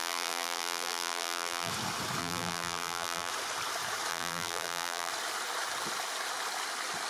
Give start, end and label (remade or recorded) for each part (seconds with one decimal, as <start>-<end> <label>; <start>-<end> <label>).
0.0-1.7 remade; 1.7-2.2 recorded; 2.2-3.3 remade; 3.3-4.1 recorded; 4.1-5.1 remade; 5.1-7.1 recorded